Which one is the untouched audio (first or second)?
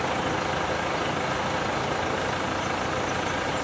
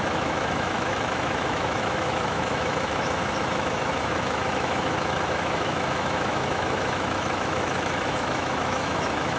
first